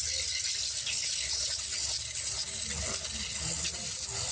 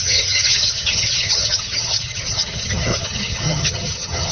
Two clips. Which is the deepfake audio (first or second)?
second